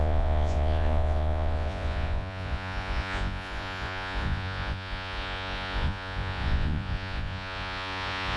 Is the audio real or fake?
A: fake